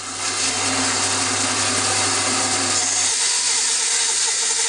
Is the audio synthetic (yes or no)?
no